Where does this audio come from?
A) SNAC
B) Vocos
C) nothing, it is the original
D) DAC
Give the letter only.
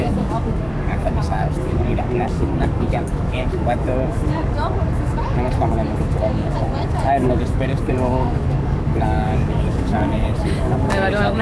D